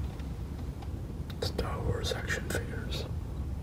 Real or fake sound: real